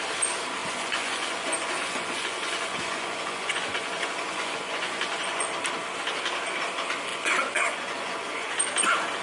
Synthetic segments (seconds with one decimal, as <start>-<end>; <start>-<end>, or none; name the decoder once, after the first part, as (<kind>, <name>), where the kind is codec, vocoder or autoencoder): 0.6-5.5 (vocoder, Vocos); 7.1-8.5